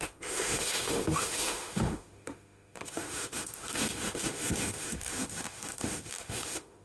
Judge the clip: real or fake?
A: fake